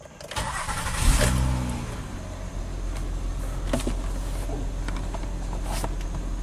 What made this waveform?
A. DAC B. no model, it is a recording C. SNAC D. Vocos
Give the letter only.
B